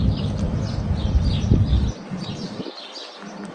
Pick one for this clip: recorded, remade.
remade